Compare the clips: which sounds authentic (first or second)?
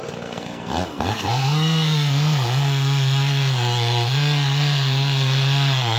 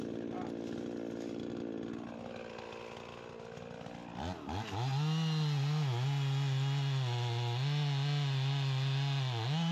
second